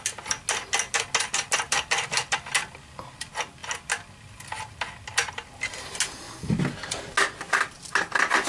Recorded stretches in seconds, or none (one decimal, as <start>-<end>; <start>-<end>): 0.0-8.5